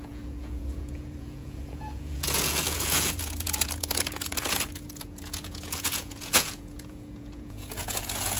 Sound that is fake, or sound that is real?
fake